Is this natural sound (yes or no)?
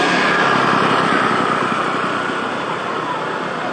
yes